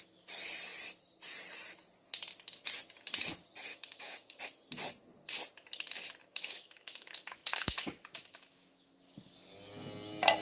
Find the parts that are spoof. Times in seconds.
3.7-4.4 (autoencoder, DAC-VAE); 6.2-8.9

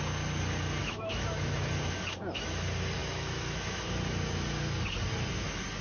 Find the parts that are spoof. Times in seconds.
0.8-1.7 (autoencoder, DAC-VAE); 3.0-3.8

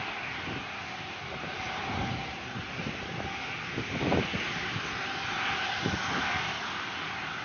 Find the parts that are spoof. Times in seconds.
2.2-3.1 (vocoder, BigVGAN v2)

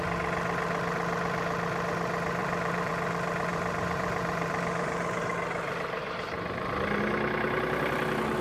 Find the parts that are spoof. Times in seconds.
2.4-2.9 (vocoder, BigVGAN v2); 3.5-5.3; 6.0-7.0